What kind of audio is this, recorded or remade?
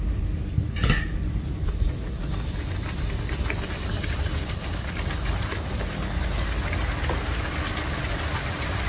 recorded